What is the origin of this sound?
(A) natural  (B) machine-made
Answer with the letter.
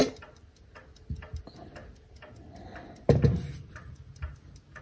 A